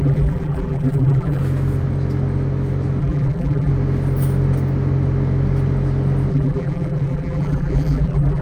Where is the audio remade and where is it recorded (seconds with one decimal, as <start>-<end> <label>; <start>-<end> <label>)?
0.0-1.4 remade; 1.4-3.0 recorded; 3.0-3.7 remade; 3.7-6.3 recorded; 6.3-8.4 remade